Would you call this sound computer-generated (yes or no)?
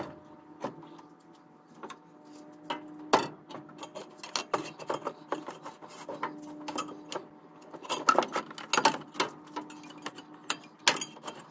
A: no